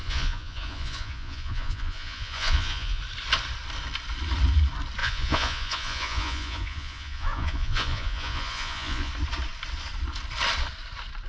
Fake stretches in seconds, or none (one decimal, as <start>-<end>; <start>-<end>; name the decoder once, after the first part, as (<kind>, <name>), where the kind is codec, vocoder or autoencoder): 0.0-3.0 (vocoder, Vocos); 5.0-9.1